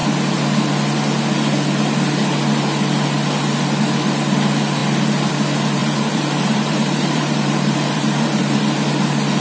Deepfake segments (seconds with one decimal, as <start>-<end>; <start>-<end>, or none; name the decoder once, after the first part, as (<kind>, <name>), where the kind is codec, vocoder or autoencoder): 5.8-8.6 (vocoder, BigVGAN v2)